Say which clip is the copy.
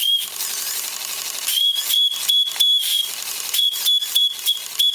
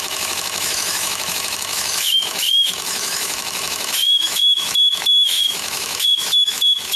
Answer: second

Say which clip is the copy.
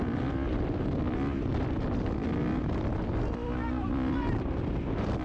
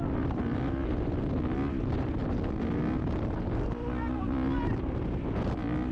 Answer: first